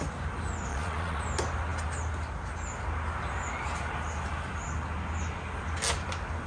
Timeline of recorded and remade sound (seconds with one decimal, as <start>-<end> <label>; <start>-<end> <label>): 0.0-0.7 recorded; 0.7-1.2 remade; 1.2-6.5 recorded